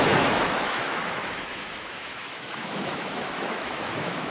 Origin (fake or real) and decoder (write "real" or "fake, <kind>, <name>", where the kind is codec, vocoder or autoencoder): fake, autoencoder, DAC-VAE